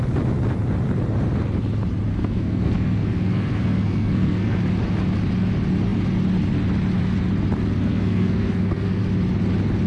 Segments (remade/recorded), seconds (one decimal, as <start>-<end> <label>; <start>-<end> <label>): 0.0-2.1 recorded; 2.1-4.6 remade; 4.6-7.8 recorded; 7.8-9.0 remade; 9.0-9.9 recorded